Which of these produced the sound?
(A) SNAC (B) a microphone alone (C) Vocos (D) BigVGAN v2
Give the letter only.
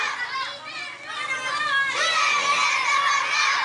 B